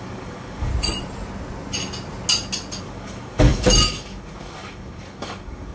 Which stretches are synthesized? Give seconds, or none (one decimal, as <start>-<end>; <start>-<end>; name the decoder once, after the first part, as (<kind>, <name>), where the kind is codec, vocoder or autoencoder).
0.0-0.7 (codec, DAC); 2.8-5.7